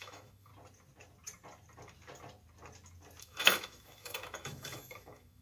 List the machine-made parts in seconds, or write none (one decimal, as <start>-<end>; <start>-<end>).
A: 0.0-0.5; 3.2-5.4